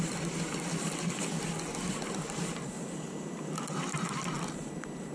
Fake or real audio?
real